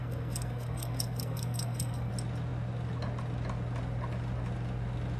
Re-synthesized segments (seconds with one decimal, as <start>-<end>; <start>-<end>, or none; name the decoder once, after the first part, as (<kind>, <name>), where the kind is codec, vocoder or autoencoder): 0.0-2.1 (codec, SNAC)